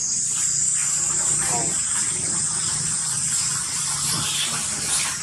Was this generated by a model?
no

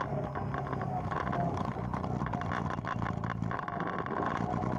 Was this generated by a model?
no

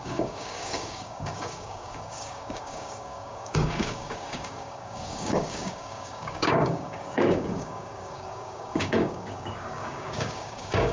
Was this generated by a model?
yes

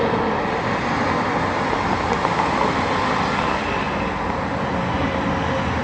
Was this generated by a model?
no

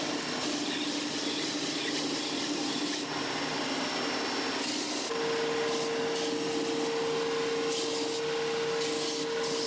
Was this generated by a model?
no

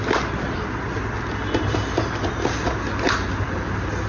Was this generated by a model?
no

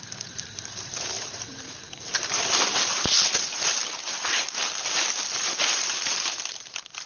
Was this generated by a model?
yes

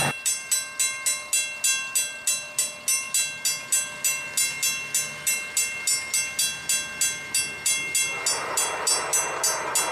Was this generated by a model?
no